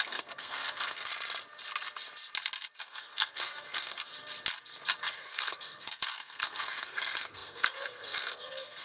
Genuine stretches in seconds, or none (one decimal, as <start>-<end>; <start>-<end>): 1.1-2.8; 4.1-5.1